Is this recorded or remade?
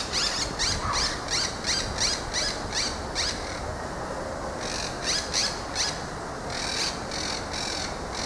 recorded